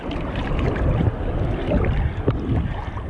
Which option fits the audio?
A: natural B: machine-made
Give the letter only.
A